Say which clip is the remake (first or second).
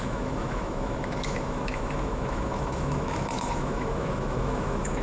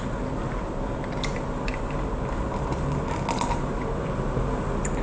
first